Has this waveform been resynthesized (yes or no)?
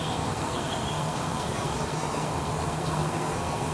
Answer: yes